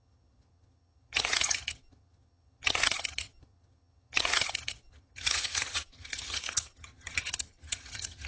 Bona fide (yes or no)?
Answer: no